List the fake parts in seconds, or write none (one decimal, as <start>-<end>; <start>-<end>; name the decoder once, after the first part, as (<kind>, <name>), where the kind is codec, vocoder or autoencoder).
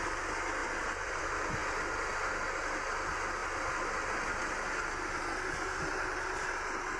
none